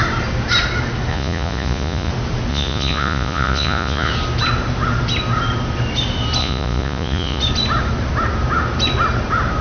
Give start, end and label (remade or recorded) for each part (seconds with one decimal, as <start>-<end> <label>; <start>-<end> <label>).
0.0-1.1 recorded; 1.1-2.1 remade; 2.1-2.5 recorded; 2.5-4.1 remade; 4.1-6.4 recorded; 6.4-7.4 remade; 7.4-9.6 recorded